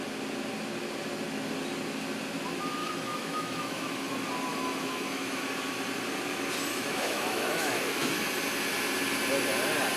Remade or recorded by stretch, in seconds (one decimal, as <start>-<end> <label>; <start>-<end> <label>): 0.0-2.8 recorded; 2.8-4.1 remade; 4.1-4.5 recorded; 4.5-5.4 remade; 5.4-6.7 recorded; 6.7-8.1 remade; 8.1-10.0 recorded